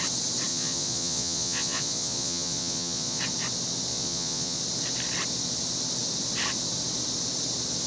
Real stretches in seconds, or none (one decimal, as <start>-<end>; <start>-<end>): 0.0-0.5; 3.2-3.9; 4.6-7.9